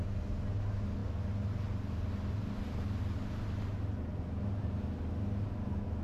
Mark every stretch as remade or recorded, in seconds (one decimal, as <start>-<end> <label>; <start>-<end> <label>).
0.0-6.0 recorded